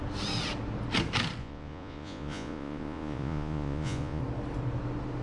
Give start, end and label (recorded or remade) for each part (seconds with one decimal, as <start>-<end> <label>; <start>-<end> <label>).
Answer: 0.0-1.4 recorded; 1.4-4.2 remade; 4.2-5.2 recorded